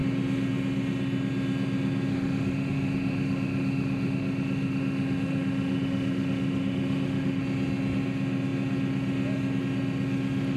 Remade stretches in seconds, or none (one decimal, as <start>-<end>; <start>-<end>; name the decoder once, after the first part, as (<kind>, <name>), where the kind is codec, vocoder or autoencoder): 2.1-7.4 (autoencoder, DAC-VAE)